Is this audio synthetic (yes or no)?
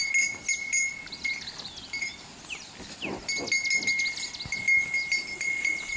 no